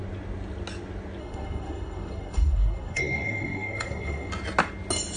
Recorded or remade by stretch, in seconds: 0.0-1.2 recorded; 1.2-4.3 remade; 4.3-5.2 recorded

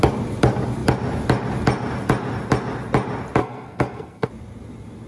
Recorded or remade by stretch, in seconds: 0.0-3.4 recorded; 3.4-4.3 remade; 4.3-5.1 recorded

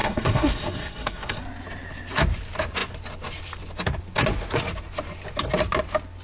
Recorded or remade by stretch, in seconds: 0.0-1.4 remade; 1.4-6.2 recorded

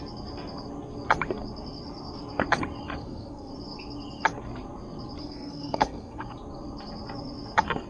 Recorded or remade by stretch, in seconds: 0.0-3.0 recorded; 3.0-3.5 remade; 3.5-5.2 recorded; 5.2-6.2 remade; 6.2-7.9 recorded

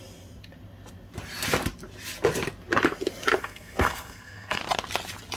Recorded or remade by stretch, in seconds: 0.0-3.4 recorded; 3.4-4.6 remade; 4.6-5.4 recorded

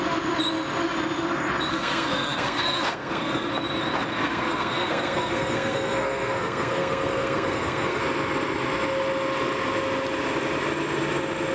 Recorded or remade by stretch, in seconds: 0.0-1.7 recorded; 1.7-3.5 remade; 3.5-4.1 recorded; 4.1-8.0 remade; 8.0-11.5 recorded

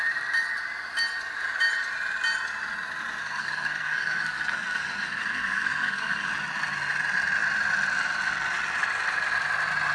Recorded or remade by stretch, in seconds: 0.0-3.2 recorded; 3.2-6.3 remade; 6.3-9.9 recorded

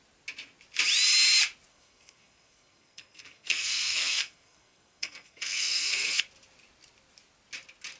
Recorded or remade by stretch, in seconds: 0.0-1.7 recorded; 1.7-6.2 remade; 6.2-8.0 recorded